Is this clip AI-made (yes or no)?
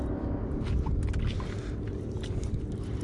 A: no